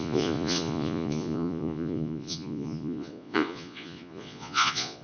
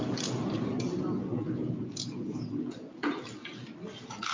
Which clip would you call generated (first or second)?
first